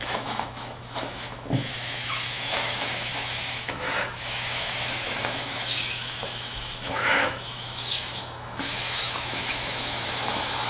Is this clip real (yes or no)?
no